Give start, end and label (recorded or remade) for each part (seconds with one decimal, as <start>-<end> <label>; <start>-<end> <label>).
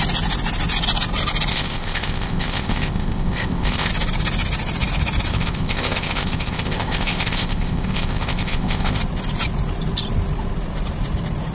0.0-1.5 recorded; 1.5-3.9 remade; 3.9-5.3 recorded; 5.3-9.0 remade; 9.0-11.5 recorded